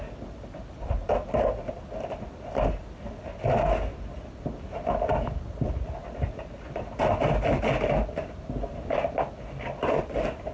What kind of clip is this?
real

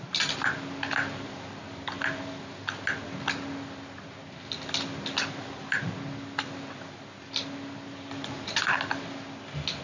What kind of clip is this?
real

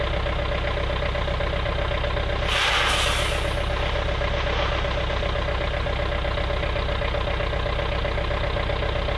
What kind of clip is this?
real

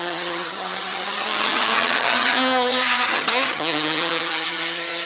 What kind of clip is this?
fake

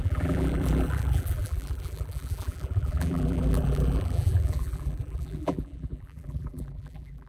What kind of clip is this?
fake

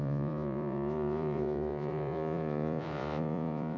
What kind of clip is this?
fake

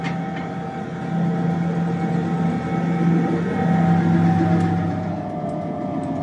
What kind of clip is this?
real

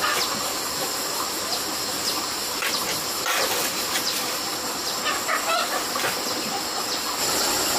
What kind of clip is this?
real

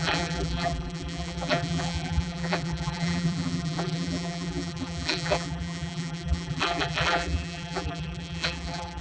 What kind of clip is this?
fake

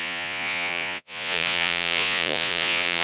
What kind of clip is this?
fake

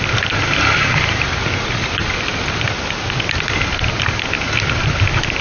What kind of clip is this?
real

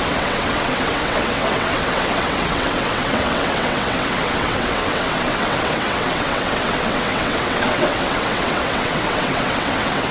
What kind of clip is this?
fake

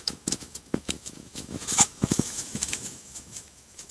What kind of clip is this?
fake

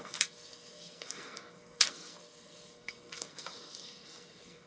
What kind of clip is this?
fake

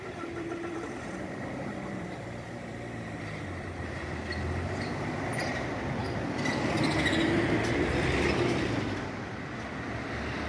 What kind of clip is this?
fake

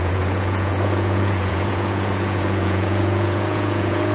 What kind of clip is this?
fake